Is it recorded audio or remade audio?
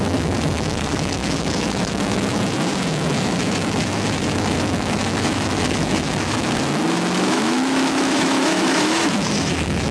remade